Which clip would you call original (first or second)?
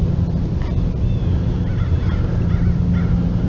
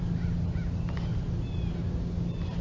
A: second